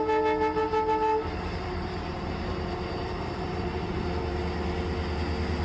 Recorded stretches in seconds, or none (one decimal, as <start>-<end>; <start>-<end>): 0.0-0.6; 4.0-5.6